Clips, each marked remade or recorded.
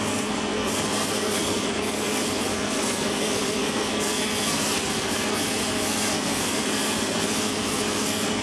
remade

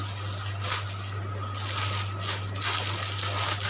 recorded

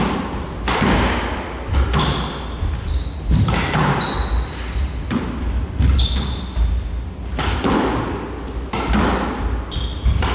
recorded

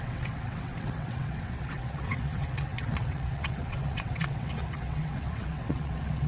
remade